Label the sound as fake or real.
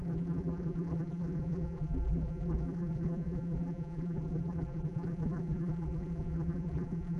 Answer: fake